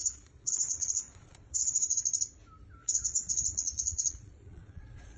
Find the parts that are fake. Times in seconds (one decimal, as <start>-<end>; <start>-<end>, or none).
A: 0.0-2.0; 2.8-5.2